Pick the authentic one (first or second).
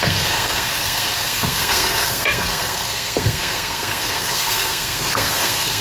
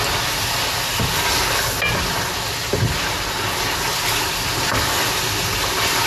second